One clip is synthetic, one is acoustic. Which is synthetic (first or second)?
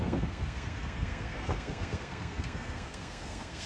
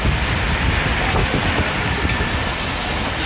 first